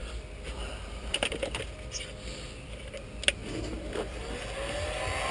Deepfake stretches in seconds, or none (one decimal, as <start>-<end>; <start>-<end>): 1.1-1.8